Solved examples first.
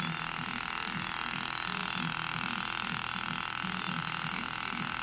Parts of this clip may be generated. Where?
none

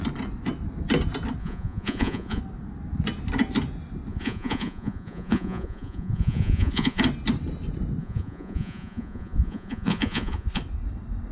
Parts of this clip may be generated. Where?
1.4-2.4 (vocoder, Vocos); 4.1-7.0; 8.0-10.6

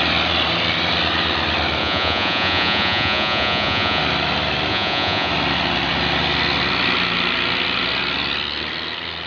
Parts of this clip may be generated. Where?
1.8-4.0 (vocoder, Vocos); 4.7-5.3

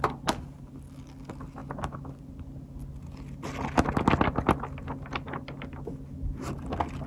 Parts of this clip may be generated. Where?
none

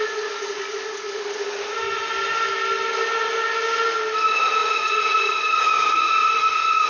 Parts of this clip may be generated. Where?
4.6-5.6 (vocoder, Vocos)